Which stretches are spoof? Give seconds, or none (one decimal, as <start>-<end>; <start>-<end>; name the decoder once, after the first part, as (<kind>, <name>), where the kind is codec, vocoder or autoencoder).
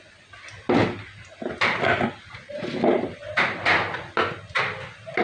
none